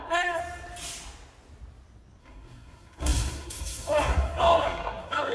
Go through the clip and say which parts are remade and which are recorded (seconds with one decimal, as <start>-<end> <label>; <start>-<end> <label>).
0.0-0.4 remade; 0.4-2.2 recorded; 2.2-5.3 remade